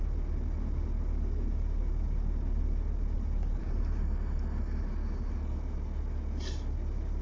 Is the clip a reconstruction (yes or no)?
no